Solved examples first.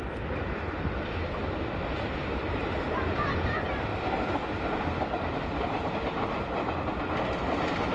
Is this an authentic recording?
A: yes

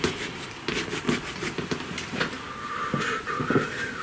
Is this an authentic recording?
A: yes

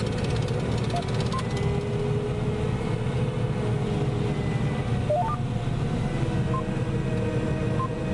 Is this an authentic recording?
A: yes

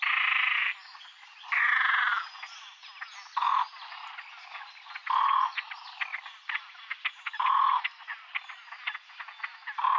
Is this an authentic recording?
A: yes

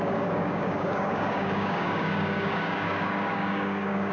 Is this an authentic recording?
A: no